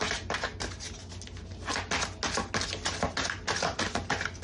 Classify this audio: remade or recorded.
recorded